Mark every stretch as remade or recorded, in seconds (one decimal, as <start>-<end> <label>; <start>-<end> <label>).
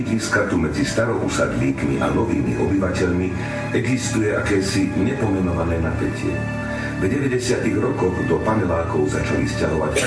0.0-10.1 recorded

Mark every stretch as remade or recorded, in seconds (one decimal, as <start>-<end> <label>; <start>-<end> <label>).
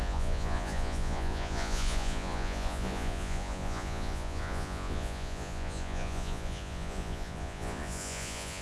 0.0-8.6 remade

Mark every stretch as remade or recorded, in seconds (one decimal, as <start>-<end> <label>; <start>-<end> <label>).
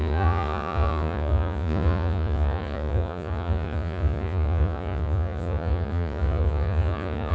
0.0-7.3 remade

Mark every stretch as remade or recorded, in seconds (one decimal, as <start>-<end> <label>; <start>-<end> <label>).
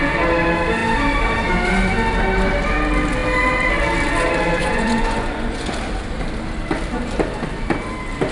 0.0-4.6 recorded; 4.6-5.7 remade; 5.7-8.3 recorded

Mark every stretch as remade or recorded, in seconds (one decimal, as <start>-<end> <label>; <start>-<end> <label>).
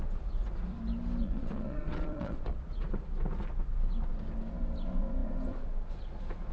0.0-1.2 recorded; 1.2-2.9 remade; 2.9-6.5 recorded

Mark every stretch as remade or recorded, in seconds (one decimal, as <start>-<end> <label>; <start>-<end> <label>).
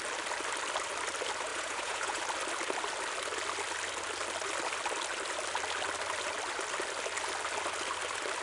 0.0-1.5 recorded; 1.5-2.2 remade; 2.2-8.4 recorded